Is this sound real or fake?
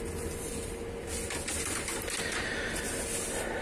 real